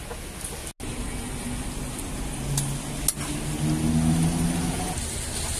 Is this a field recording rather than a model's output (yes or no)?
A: yes